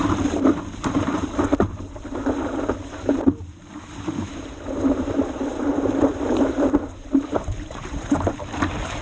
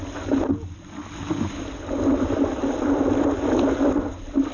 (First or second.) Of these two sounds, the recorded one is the second